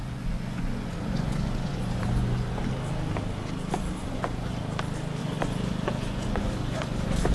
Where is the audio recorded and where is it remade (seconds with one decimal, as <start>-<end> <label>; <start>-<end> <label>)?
0.0-2.6 remade; 2.6-4.0 recorded; 4.0-4.6 remade; 4.6-5.2 recorded; 5.2-7.3 remade